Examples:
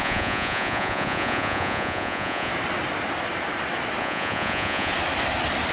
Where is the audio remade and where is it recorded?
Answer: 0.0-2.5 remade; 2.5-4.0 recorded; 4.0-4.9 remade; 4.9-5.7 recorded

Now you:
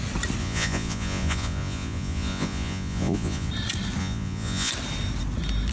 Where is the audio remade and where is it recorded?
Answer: 0.0-0.4 recorded; 0.4-3.5 remade; 3.5-4.0 recorded; 4.0-4.7 remade; 4.7-5.7 recorded

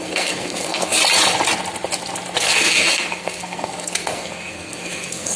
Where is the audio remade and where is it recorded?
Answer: 0.0-1.0 remade; 1.0-2.4 recorded; 2.4-5.4 remade